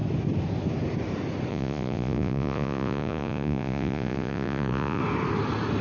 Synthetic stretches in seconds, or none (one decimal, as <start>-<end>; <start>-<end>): 1.5-5.0